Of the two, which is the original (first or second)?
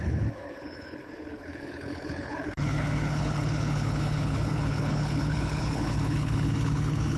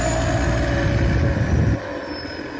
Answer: second